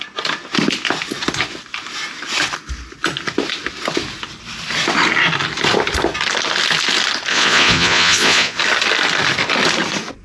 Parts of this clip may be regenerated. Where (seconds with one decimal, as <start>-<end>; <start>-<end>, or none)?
7.3-8.6